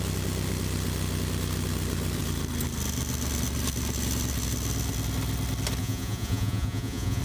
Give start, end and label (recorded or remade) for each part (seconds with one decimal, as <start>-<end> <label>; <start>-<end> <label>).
0.0-5.8 recorded; 5.8-7.2 remade